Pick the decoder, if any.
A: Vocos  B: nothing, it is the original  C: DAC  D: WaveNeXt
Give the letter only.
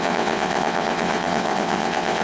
D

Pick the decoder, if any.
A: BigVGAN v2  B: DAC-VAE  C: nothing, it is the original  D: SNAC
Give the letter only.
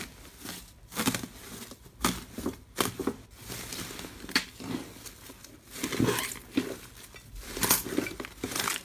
C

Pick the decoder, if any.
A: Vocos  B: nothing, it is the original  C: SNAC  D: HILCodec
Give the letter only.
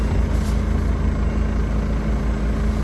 B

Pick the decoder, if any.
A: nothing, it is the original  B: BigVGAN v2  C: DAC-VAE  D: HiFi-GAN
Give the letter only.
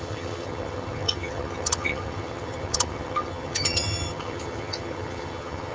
D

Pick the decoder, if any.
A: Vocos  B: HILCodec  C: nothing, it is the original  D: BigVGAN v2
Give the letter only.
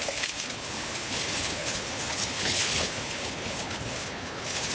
B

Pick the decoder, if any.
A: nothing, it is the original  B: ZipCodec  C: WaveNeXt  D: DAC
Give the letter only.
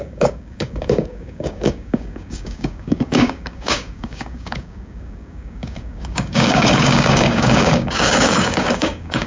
D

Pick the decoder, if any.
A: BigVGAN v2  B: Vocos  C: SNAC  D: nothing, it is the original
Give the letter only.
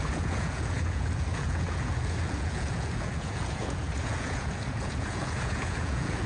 B